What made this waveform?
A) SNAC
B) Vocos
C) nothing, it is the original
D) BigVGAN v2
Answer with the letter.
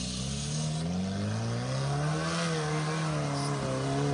C